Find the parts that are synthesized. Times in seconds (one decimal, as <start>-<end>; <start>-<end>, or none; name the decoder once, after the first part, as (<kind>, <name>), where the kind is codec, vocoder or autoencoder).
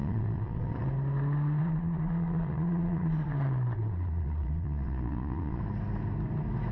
0.0-0.9 (vocoder, Vocos); 1.6-5.6